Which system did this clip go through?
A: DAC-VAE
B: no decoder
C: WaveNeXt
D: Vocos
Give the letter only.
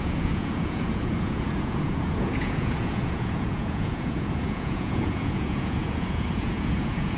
D